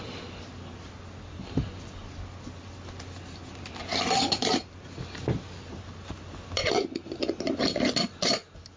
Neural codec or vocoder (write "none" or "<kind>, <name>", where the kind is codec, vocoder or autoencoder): none